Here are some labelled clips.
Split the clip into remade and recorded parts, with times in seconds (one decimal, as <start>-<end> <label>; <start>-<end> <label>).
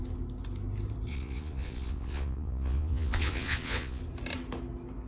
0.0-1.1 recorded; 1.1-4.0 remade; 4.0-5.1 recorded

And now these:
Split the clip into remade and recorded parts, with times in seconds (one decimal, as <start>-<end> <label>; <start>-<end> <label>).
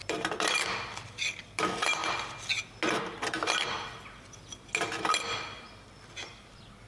0.0-6.9 recorded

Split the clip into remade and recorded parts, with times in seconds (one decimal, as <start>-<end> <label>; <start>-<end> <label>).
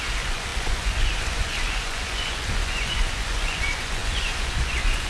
0.0-5.1 remade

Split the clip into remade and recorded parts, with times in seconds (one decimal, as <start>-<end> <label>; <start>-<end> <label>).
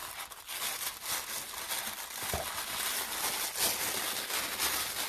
0.0-5.1 recorded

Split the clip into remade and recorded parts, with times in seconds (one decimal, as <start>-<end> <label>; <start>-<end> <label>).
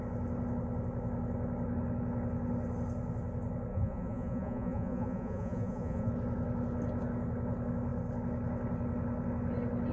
0.0-3.7 recorded; 3.7-6.1 remade; 6.1-9.9 recorded